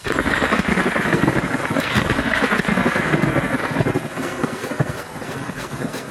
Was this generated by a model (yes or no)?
yes